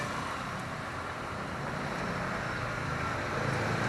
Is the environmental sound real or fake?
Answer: real